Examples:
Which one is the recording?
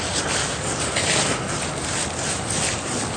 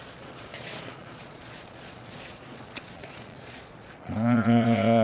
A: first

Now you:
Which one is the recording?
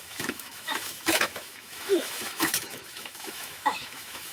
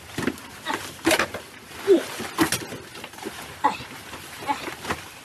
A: second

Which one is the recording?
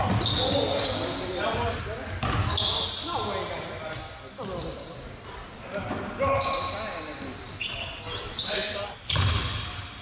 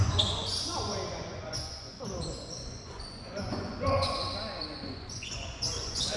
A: first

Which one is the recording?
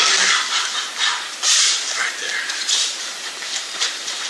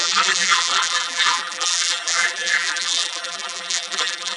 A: first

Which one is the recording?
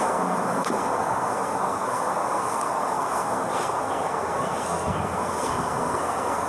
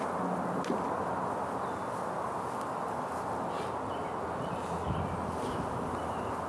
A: second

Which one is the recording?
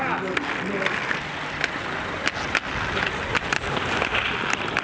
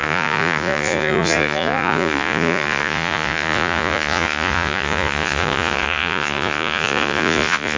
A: first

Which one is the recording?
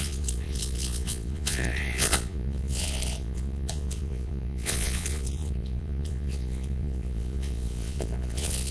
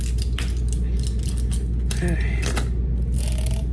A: second